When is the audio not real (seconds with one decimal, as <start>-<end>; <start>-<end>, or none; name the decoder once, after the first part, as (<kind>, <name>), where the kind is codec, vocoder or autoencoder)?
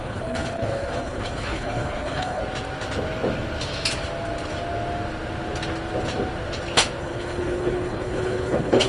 0.0-2.4 (codec, HILCodec); 7.0-8.9